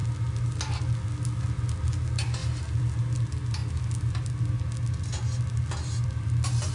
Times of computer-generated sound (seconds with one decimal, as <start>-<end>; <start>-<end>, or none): none